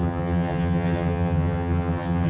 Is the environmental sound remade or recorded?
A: remade